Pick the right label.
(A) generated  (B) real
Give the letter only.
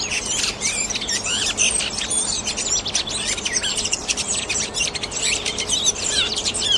A